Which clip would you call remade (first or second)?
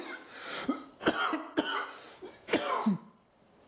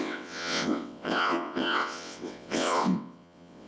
second